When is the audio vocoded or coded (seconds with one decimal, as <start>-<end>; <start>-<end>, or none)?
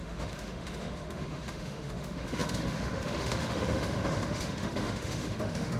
0.0-5.8